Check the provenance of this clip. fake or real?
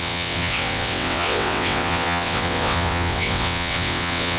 fake